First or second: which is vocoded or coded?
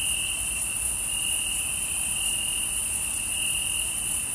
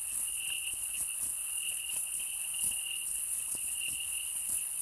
second